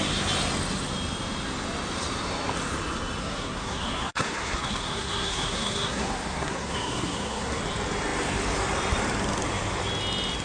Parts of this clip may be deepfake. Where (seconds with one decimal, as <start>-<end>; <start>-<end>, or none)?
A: 3.2-7.6